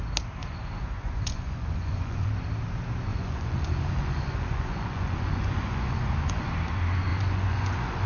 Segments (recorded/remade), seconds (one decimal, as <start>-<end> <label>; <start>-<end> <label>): 0.0-0.4 recorded; 0.4-2.3 remade; 2.3-3.1 recorded; 3.1-6.5 remade; 6.5-7.1 recorded; 7.1-8.1 remade